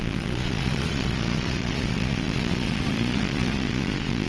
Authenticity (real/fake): fake